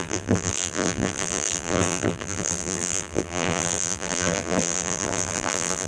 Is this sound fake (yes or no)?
yes